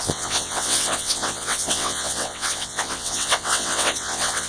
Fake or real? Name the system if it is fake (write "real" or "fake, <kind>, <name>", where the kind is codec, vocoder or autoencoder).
fake, vocoder, WaveNeXt